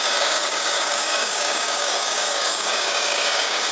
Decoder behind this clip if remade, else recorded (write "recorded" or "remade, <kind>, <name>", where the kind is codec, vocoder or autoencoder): remade, codec, DAC